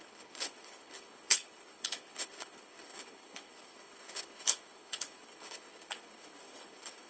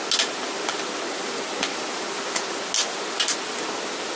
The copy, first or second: first